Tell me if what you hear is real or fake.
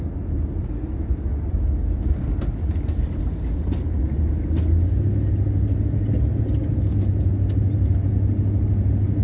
real